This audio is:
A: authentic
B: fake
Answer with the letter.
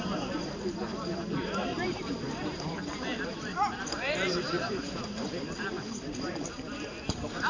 B